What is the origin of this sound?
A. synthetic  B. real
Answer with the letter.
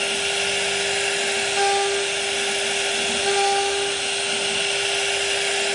B